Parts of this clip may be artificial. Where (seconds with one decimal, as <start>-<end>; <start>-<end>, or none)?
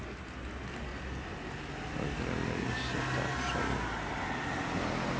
0.9-1.6